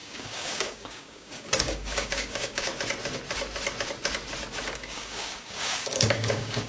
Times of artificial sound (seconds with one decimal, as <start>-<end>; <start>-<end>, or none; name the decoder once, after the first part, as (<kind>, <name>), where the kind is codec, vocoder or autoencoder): 0.0-2.7 (codec, DAC); 4.7-6.7